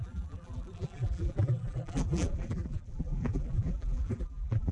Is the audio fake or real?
fake